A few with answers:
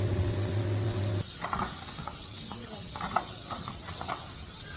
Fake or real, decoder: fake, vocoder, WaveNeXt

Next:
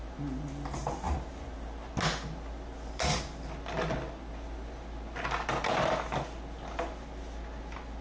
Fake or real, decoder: real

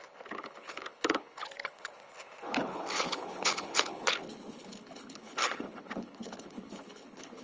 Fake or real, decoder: fake, codec, HILCodec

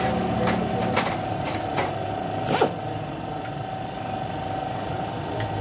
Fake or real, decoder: real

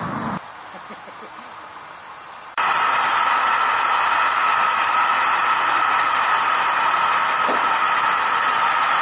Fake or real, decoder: real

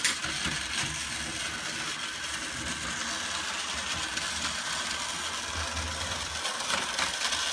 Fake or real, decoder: real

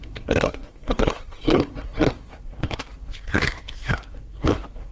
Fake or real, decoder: fake, codec, SNAC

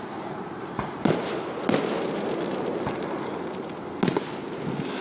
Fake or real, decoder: real